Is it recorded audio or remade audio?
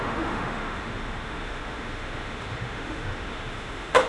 remade